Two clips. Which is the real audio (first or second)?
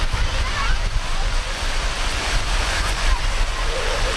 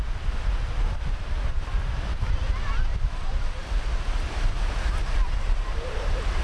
second